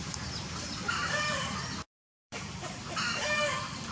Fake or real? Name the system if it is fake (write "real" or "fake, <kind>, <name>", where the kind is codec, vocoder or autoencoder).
fake, vocoder, BigVGAN v2